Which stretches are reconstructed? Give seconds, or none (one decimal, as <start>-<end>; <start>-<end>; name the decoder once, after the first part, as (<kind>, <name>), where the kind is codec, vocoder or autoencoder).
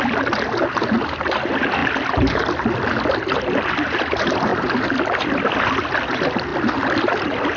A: 6.5-7.6 (vocoder, BigVGAN v2)